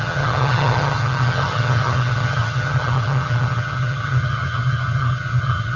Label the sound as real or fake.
fake